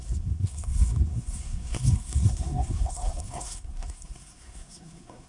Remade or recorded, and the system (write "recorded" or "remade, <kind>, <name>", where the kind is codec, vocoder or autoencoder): remade, codec, SNAC